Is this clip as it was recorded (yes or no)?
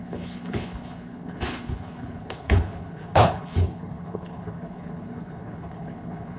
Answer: no